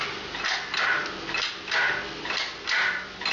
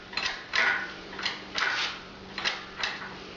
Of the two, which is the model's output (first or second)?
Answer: second